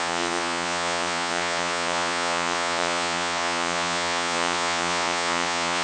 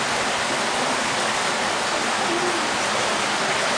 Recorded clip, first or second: second